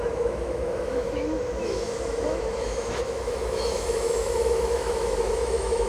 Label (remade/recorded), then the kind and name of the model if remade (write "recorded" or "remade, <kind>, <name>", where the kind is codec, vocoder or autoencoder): remade, autoencoder, DAC-VAE